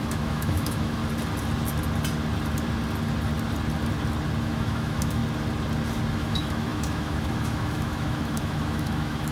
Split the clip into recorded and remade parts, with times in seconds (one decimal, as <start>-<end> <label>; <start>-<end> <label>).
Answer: 0.0-1.0 remade; 1.0-4.4 recorded; 4.4-5.2 remade; 5.2-6.1 recorded; 6.1-9.3 remade